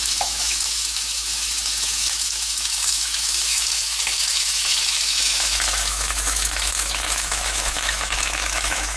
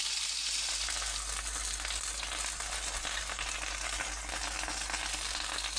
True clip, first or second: second